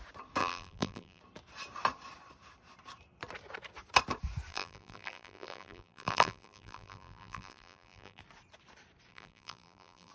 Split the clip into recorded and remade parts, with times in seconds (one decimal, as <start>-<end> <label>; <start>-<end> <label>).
0.0-0.4 recorded; 0.4-1.2 remade; 1.2-4.5 recorded; 4.5-8.2 remade; 8.2-9.1 recorded; 9.1-10.1 remade